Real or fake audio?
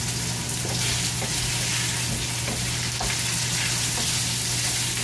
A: real